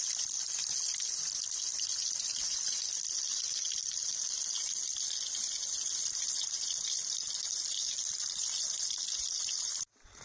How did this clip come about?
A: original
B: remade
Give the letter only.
A